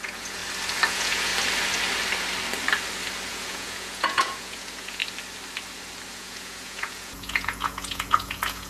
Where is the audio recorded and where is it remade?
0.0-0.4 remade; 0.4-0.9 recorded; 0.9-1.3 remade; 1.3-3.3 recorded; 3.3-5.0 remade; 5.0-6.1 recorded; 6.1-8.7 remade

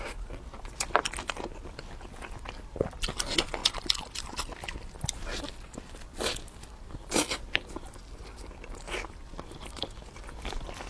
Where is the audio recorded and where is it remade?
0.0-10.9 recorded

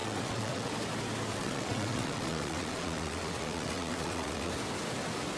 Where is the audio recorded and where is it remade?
0.0-0.7 remade; 0.7-1.3 recorded; 1.3-4.5 remade; 4.5-5.4 recorded